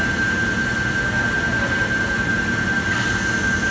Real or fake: real